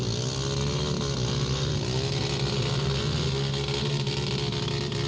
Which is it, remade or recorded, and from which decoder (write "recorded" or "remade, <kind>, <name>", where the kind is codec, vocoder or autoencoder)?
recorded